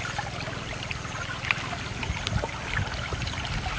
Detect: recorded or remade recorded